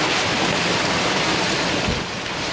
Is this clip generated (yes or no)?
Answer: no